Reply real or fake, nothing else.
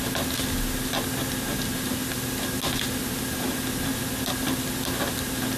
real